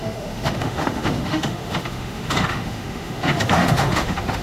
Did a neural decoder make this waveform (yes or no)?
yes